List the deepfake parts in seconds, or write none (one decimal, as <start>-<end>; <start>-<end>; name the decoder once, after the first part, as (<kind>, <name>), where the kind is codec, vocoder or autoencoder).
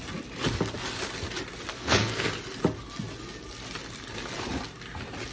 1.7-2.3 (codec, SNAC)